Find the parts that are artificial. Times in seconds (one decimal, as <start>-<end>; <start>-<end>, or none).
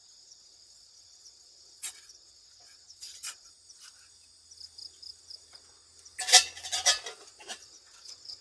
0.0-3.5; 7.6-8.4